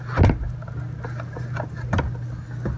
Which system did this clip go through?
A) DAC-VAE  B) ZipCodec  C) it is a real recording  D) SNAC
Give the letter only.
C